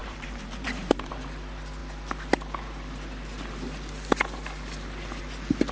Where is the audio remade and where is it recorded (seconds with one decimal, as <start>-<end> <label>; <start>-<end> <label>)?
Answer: 0.0-1.1 remade; 1.1-5.7 recorded

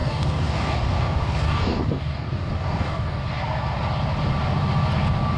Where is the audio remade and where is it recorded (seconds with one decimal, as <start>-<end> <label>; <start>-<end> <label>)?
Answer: 0.0-3.2 remade; 3.2-5.4 recorded

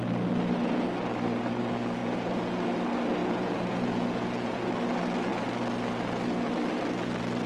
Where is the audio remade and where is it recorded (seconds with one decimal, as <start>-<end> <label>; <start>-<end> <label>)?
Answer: 0.0-2.0 recorded; 2.0-2.7 remade; 2.7-3.2 recorded; 3.2-4.7 remade; 4.7-7.5 recorded

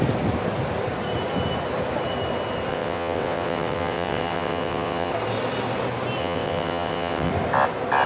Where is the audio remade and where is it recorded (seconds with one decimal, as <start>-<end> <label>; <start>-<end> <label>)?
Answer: 0.0-2.7 recorded; 2.7-5.1 remade; 5.1-6.2 recorded; 6.2-7.3 remade; 7.3-8.1 recorded

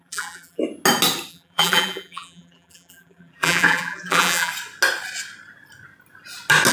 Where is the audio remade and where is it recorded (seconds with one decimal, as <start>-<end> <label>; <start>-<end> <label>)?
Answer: 0.0-0.6 remade; 0.6-1.3 recorded; 1.3-4.5 remade; 4.5-6.7 recorded